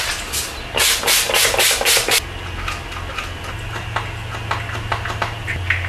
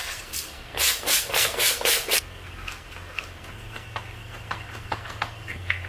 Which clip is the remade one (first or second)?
second